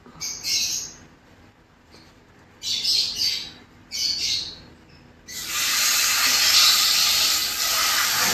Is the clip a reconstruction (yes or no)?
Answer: no